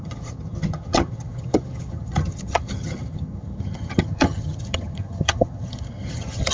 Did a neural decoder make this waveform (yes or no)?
yes